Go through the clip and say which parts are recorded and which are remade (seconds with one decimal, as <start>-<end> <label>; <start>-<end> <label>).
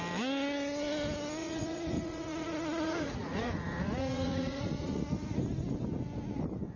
0.0-1.4 recorded; 1.4-5.4 remade; 5.4-6.8 recorded